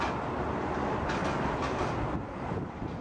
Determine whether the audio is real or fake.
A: real